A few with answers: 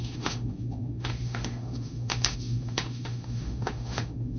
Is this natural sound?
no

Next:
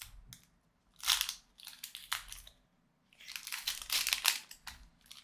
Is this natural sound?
yes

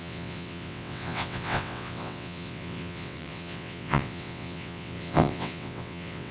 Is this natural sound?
no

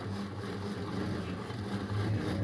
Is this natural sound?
yes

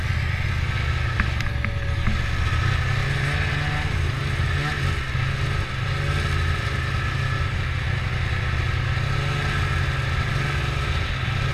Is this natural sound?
yes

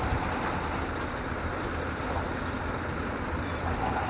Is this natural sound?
yes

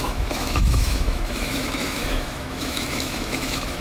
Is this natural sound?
no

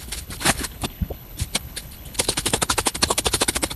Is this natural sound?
no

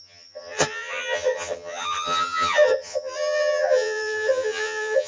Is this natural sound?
no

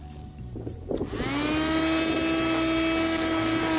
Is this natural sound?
yes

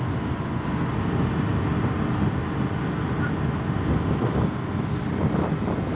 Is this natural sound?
yes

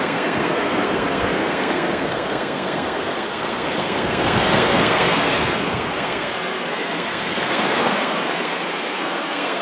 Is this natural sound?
no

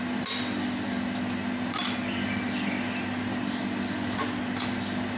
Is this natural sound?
yes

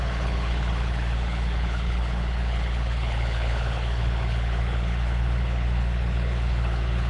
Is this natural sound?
no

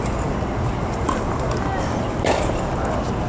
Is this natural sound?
yes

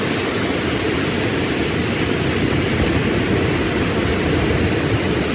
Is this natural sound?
yes